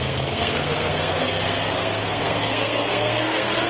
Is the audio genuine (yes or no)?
no